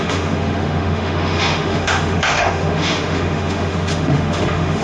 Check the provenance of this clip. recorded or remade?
remade